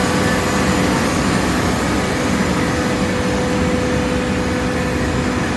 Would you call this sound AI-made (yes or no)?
no